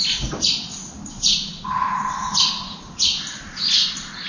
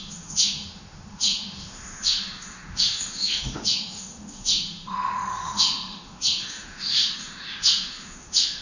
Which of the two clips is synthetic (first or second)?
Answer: second